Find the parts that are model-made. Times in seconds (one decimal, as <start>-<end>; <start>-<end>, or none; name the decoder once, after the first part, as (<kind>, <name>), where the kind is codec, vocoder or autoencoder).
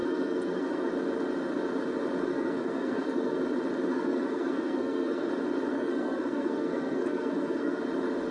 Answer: 0.0-0.9 (codec, SNAC); 2.3-3.4; 3.9-5.3; 5.7-7.8